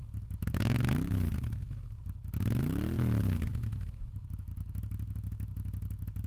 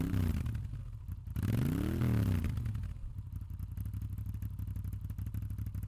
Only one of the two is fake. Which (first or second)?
first